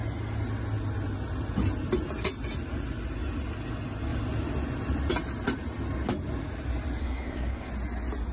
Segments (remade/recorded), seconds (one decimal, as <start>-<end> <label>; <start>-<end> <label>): 0.0-7.0 recorded; 7.0-7.7 remade; 7.7-8.3 recorded